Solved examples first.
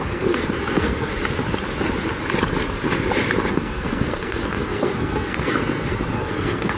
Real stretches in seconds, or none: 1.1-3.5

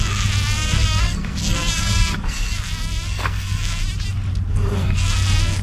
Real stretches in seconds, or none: 3.8-4.5

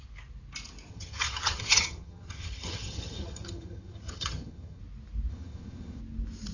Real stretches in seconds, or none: 0.0-0.9; 4.8-5.3; 6.0-6.5

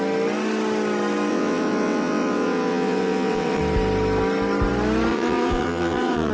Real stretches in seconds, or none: 0.0-1.3; 3.6-5.1

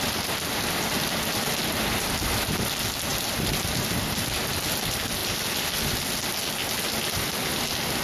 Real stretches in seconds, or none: 0.0-3.1; 4.4-8.0

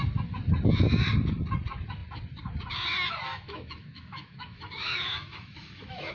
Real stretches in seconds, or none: 0.0-3.3

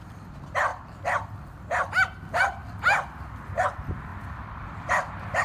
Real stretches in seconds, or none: 0.0-4.1

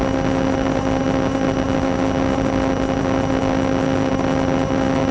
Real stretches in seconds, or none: 0.0-5.1